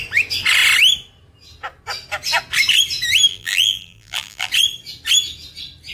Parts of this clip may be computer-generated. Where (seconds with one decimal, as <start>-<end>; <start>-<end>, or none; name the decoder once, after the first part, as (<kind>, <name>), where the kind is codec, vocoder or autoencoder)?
3.3-4.5 (vocoder, BigVGAN v2)